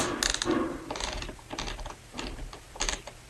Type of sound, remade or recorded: recorded